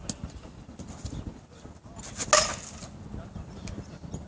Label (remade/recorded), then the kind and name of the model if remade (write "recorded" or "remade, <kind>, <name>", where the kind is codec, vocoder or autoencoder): recorded